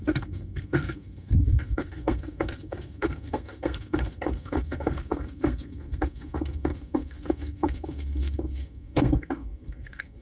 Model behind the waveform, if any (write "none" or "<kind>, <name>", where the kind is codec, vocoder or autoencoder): codec, SNAC